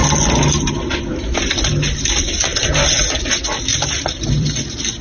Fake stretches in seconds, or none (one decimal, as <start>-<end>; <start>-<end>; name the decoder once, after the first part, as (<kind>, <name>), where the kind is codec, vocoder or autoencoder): 3.7-4.6 (vocoder, BigVGAN v2)